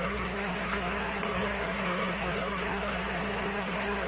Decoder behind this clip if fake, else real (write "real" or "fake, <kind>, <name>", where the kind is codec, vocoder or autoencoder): fake, codec, SNAC